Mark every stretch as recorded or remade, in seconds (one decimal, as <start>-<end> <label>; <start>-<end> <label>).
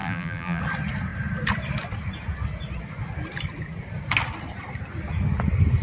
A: 0.0-0.6 remade; 0.6-5.8 recorded